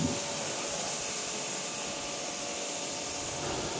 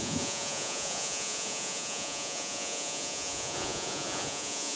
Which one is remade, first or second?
second